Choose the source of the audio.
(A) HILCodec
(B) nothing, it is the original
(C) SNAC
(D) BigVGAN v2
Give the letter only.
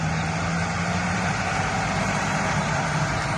B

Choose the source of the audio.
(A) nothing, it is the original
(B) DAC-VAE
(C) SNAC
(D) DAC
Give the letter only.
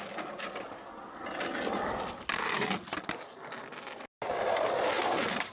A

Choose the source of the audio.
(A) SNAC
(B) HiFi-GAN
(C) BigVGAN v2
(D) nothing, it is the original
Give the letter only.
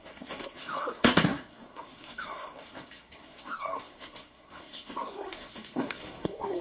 A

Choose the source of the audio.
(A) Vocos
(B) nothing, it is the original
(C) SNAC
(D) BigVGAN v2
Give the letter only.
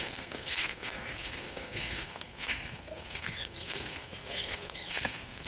C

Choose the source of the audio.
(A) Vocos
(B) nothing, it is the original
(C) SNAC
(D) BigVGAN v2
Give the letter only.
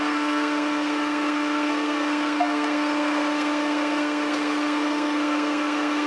C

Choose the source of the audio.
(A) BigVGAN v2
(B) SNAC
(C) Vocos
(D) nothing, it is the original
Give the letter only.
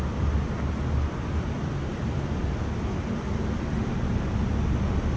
D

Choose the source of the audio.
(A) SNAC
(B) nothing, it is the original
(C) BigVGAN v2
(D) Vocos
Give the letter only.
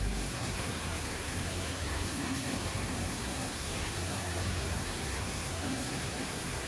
A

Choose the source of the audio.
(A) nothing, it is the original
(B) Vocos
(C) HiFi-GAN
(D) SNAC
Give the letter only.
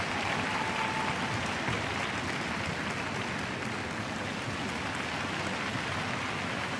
A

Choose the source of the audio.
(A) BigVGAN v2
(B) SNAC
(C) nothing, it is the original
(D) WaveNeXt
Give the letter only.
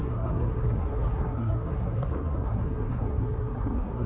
B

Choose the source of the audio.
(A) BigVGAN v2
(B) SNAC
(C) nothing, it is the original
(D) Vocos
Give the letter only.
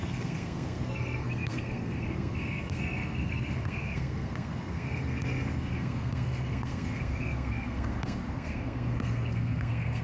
B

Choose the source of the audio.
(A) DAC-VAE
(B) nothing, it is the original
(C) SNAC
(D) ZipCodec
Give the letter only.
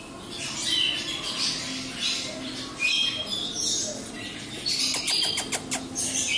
B